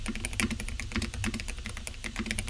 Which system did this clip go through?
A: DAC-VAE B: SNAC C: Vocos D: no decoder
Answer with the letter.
D